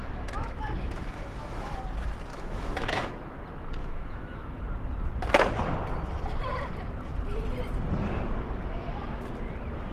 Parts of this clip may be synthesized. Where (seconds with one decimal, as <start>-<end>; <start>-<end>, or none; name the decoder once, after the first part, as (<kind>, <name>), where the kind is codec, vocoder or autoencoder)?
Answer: 0.0-1.8 (autoencoder, DAC-VAE); 2.3-3.1; 3.8-4.6